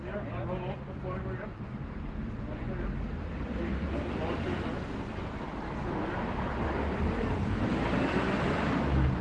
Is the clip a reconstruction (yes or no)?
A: no